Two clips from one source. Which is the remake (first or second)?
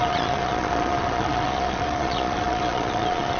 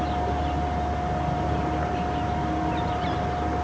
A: first